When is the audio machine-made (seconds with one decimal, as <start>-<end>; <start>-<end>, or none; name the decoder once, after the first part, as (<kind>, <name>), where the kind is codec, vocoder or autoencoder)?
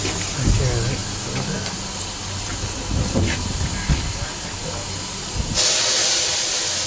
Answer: none